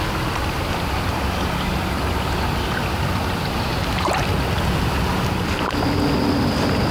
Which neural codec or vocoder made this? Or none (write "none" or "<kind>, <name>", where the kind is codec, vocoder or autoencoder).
none